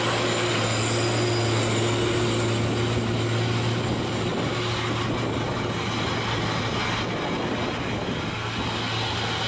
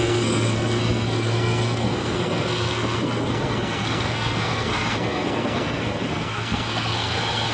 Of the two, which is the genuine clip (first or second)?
first